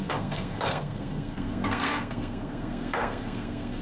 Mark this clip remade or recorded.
remade